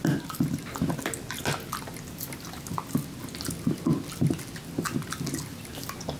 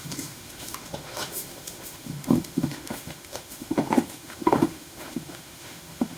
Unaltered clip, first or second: first